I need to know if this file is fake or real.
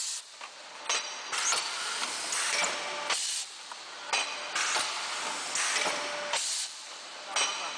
real